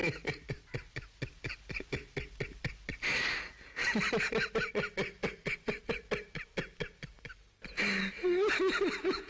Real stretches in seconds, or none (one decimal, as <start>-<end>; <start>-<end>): 0.0-9.3